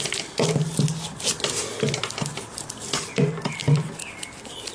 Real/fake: real